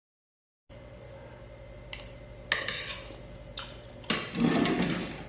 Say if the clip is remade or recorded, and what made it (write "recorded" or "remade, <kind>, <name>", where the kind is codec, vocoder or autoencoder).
recorded